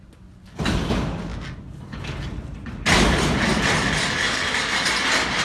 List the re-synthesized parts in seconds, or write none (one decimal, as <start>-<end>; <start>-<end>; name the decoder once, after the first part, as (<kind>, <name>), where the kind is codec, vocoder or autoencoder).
none